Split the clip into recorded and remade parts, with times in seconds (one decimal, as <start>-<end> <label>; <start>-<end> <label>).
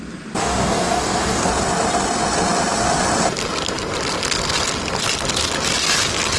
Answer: 0.0-0.4 recorded; 0.4-1.5 remade; 1.5-6.4 recorded